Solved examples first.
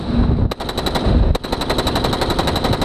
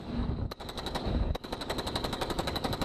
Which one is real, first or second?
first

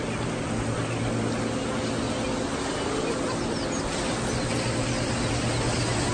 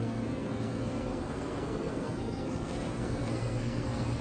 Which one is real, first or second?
first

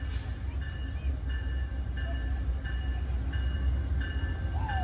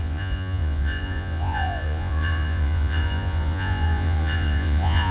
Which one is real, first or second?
first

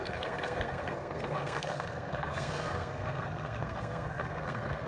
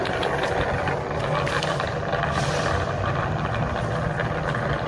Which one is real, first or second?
second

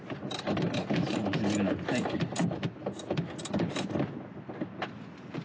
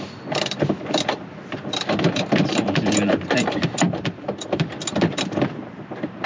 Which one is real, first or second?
first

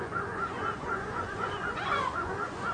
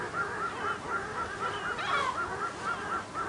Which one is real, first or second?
second